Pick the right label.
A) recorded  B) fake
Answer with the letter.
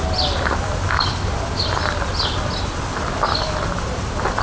A